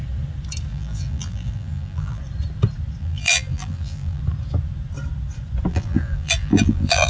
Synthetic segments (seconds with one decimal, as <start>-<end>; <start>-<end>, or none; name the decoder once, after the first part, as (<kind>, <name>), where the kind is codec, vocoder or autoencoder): 0.7-2.2 (vocoder, BigVGAN v2); 3.0-4.2; 5.7-7.1